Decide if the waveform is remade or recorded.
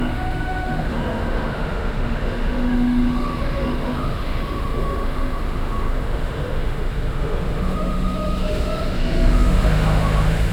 remade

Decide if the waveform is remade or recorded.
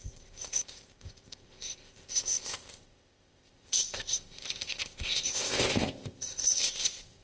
remade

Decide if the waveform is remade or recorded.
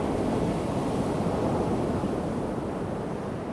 recorded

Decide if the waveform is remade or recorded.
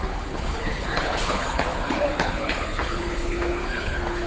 remade